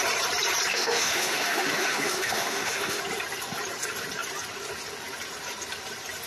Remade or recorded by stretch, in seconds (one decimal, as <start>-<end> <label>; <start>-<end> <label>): 0.0-0.7 recorded; 0.7-3.0 remade; 3.0-6.3 recorded

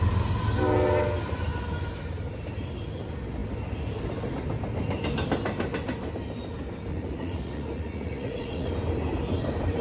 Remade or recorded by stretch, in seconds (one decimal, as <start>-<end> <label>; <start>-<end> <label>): 0.0-6.9 recorded; 6.9-8.7 remade; 8.7-9.8 recorded

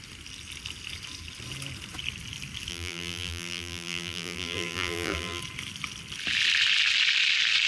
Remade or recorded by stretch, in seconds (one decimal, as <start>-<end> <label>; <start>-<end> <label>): 0.0-2.7 recorded; 2.7-5.4 remade; 5.4-7.7 recorded

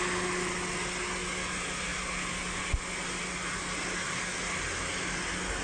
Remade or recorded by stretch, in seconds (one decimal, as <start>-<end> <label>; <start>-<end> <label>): 0.0-5.6 recorded

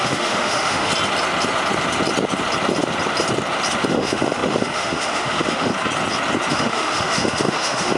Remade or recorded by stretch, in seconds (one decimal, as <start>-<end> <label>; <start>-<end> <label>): 0.0-0.9 remade; 0.9-3.9 recorded; 3.9-5.7 remade; 5.7-6.5 recorded; 6.5-8.0 remade

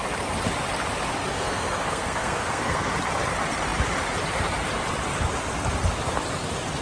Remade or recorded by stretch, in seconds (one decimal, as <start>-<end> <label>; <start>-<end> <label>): 0.0-1.2 recorded; 1.2-2.9 remade; 2.9-6.8 recorded

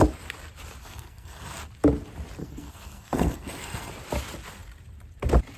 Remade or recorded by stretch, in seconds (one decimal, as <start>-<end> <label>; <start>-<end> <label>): 0.0-0.8 recorded; 0.8-1.6 remade; 1.6-2.4 recorded; 2.4-3.9 remade; 3.9-5.6 recorded